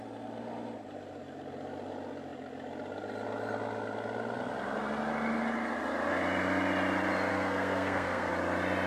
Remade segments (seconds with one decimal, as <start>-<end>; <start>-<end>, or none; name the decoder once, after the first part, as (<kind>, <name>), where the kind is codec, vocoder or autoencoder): 7.3-8.3 (codec, SNAC)